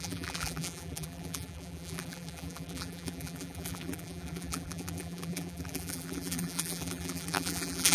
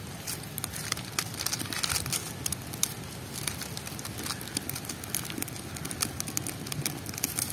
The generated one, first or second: first